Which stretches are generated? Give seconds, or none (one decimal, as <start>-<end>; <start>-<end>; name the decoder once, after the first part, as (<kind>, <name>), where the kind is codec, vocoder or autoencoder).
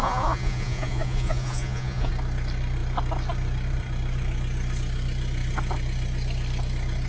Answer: 0.0-2.1 (vocoder, Vocos)